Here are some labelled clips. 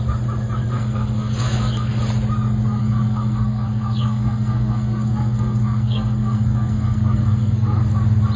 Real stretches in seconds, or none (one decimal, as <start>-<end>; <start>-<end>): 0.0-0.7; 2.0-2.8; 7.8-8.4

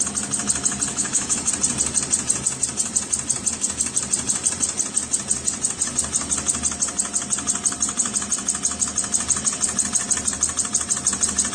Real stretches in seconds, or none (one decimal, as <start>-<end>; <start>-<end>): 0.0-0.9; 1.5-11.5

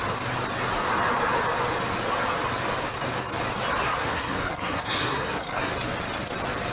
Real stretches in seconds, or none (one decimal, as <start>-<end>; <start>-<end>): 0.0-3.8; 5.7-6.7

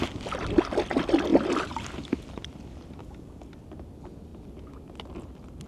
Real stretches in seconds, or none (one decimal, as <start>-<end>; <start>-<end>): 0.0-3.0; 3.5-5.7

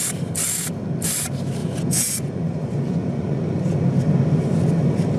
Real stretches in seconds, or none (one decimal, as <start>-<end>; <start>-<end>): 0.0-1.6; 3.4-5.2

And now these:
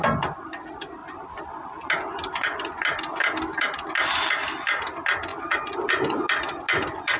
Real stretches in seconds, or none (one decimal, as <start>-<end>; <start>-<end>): 0.0-7.2

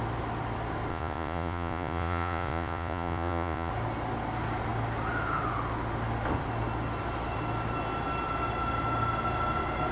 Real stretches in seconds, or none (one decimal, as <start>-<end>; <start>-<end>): 0.0-0.9; 3.7-9.9